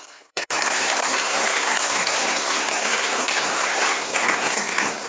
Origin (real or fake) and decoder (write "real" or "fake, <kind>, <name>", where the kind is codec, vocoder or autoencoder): fake, codec, SNAC